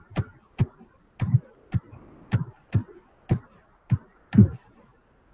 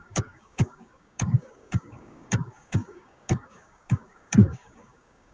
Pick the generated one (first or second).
second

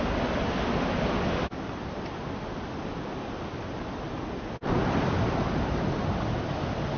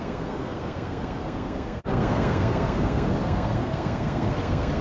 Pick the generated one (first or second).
second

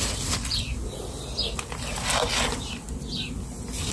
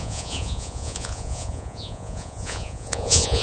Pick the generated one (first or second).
second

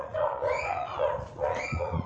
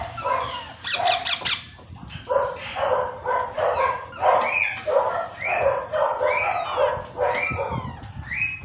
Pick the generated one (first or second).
first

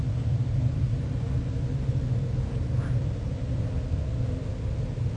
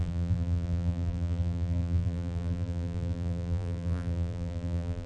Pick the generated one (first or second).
second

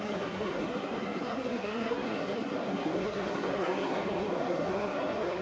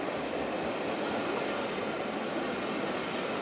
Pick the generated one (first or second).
first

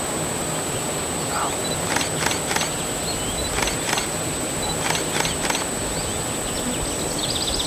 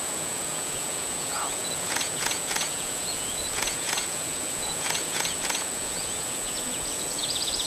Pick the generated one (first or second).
second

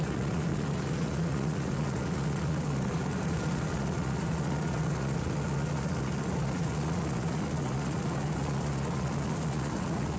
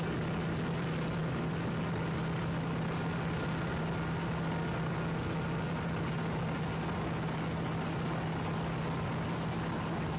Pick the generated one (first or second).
first